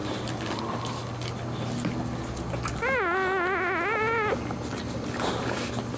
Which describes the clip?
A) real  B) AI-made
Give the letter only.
A